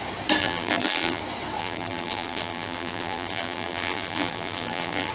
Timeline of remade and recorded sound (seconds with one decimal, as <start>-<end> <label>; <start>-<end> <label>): 0.0-0.4 recorded; 0.4-1.2 remade; 1.2-1.6 recorded; 1.6-5.1 remade